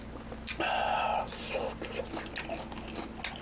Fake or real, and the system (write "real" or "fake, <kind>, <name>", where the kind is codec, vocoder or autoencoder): real